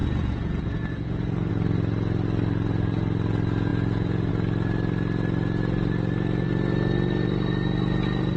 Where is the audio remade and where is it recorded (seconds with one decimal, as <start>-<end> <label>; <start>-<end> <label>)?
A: 0.0-1.5 remade; 1.5-3.7 recorded; 3.7-4.3 remade; 4.3-8.4 recorded